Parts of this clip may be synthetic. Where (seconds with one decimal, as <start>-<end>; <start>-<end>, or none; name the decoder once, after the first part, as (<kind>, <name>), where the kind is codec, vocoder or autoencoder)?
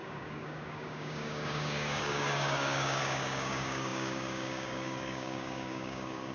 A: 0.0-6.3 (codec, DAC)